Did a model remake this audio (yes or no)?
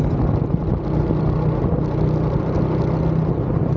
no